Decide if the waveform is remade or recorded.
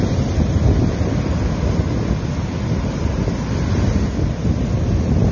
recorded